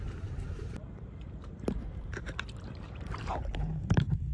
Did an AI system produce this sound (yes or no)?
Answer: yes